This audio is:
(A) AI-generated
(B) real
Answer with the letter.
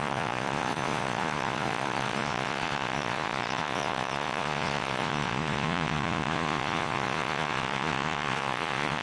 A